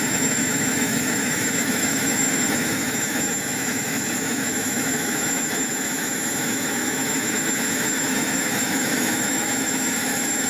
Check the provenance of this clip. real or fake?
fake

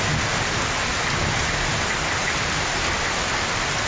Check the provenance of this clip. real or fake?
real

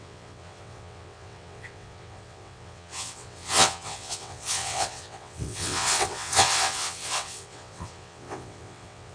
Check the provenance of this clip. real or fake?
fake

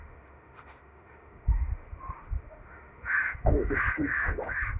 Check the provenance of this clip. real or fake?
fake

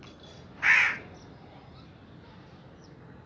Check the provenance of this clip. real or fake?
real